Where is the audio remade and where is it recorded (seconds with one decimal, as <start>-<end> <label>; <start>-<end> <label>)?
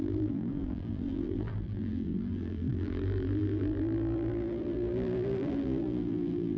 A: 0.0-6.6 remade